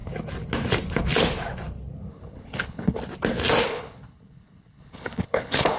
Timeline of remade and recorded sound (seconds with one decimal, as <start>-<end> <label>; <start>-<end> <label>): 0.0-2.1 recorded; 2.1-3.0 remade; 3.0-3.7 recorded; 3.7-5.8 remade